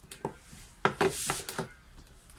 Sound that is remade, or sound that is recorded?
recorded